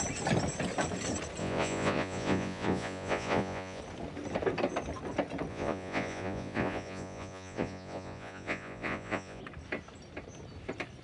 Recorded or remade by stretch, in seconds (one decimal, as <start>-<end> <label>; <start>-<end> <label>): 0.0-1.4 recorded; 1.4-3.8 remade; 3.8-5.5 recorded; 5.5-9.4 remade; 9.4-11.0 recorded